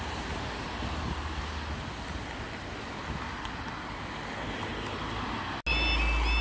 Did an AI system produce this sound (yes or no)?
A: no